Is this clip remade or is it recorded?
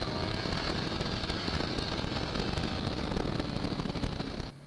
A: recorded